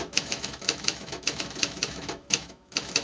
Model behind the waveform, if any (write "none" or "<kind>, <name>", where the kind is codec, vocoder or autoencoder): autoencoder, DAC-VAE